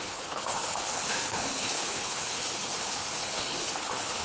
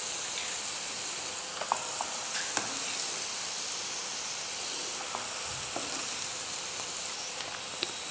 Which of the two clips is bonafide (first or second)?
second